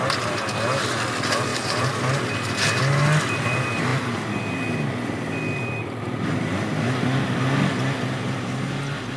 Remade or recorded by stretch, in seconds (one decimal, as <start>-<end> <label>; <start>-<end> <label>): 0.0-1.5 recorded; 1.5-2.2 remade; 2.2-9.2 recorded